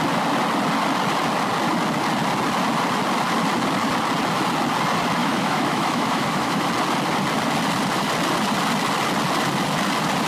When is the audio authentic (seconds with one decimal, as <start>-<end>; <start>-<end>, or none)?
0.0-5.2; 6.7-10.3